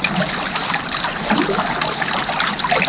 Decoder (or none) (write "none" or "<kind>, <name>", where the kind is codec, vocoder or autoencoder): none